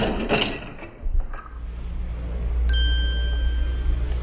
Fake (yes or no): no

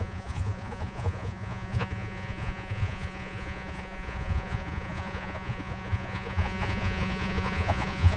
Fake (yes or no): yes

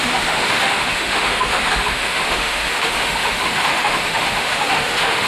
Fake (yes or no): yes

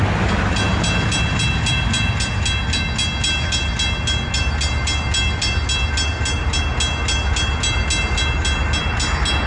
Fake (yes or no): no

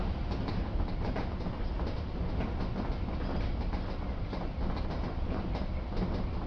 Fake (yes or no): no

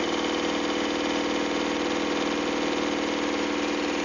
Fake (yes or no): no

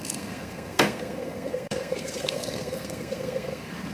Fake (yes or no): yes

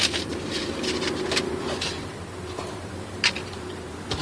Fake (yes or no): yes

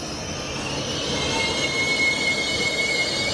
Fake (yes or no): no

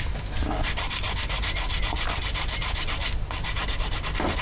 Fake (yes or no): no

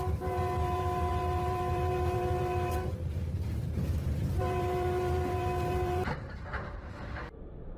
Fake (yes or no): yes